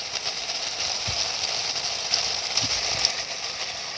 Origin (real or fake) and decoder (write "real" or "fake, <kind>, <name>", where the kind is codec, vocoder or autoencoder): real